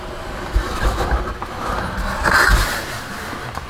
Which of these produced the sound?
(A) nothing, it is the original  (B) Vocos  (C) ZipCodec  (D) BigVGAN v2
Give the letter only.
A